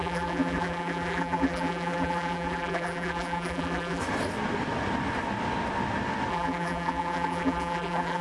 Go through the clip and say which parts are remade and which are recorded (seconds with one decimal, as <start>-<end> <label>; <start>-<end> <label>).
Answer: 0.0-4.0 remade; 4.0-6.3 recorded; 6.3-8.2 remade